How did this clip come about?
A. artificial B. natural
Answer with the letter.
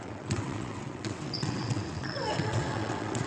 A